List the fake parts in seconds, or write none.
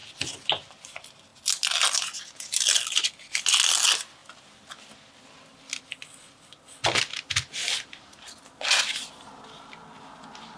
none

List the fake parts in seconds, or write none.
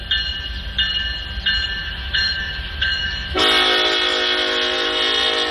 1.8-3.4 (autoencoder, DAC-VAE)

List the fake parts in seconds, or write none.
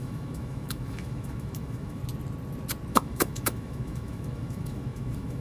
0.0-2.0 (autoencoder, DAC-VAE); 2.9-5.4